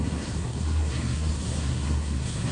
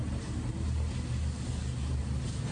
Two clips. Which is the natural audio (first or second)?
second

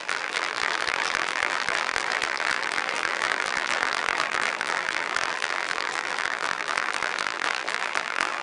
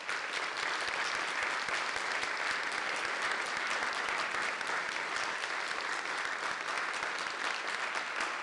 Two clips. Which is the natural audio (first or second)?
second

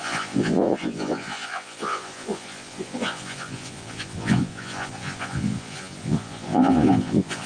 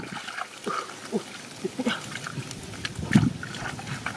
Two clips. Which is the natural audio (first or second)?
second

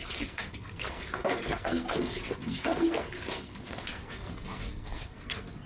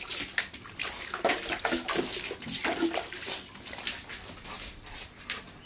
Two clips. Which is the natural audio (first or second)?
second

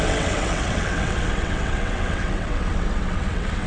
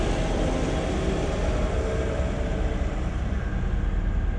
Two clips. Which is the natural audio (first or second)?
second